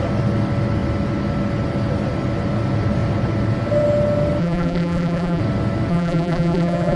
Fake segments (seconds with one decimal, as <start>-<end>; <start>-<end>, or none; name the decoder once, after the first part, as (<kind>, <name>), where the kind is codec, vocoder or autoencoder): 4.4-5.4 (vocoder, BigVGAN v2); 5.9-7.0